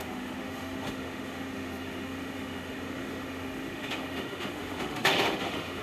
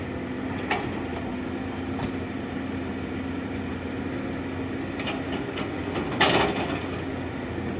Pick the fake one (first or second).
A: first